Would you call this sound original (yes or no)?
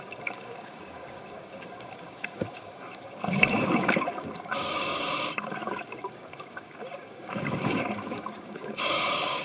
no